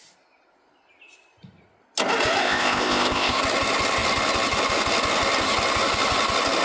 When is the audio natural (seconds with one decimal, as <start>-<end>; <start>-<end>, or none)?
0.0-2.4; 3.4-6.6

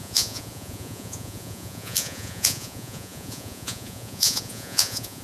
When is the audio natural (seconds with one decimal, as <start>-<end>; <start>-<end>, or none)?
none